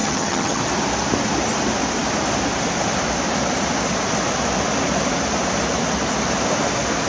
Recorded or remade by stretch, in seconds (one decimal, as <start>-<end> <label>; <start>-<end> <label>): 0.0-0.6 remade; 0.6-7.1 recorded